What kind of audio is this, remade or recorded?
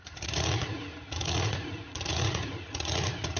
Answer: remade